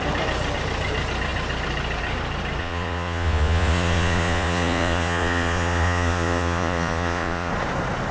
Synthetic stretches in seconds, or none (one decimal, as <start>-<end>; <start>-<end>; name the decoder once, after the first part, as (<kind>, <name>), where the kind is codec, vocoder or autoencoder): 2.6-7.5 (vocoder, Vocos)